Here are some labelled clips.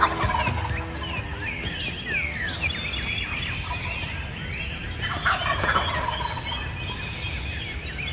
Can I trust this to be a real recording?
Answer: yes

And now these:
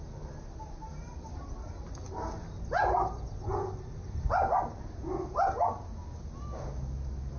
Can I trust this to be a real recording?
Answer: yes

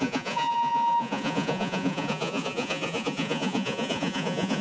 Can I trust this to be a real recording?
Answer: no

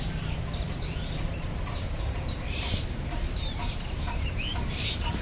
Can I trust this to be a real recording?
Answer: no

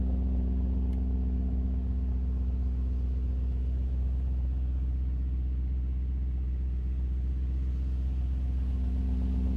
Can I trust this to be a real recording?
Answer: yes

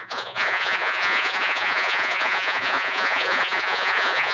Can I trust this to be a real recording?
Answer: no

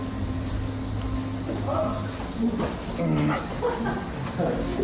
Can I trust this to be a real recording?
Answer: yes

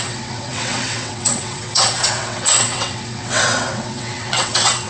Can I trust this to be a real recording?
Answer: no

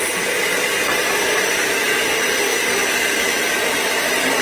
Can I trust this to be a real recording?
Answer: yes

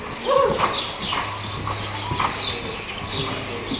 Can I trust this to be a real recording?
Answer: yes